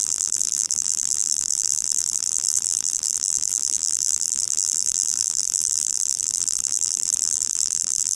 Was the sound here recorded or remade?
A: remade